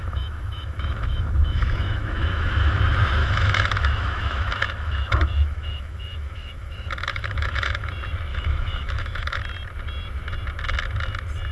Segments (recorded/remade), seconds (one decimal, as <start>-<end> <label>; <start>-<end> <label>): 0.0-2.8 remade; 2.8-3.2 recorded; 3.2-7.9 remade; 7.9-8.3 recorded; 8.3-9.4 remade; 9.4-11.5 recorded